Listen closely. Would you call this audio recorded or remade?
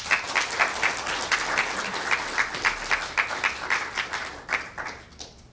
recorded